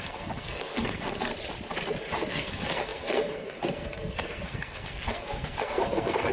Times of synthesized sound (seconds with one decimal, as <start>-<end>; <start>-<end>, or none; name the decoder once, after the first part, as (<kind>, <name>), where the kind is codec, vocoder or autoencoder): 0.0-1.3 (codec, SNAC); 2.3-6.3